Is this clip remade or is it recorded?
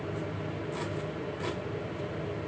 recorded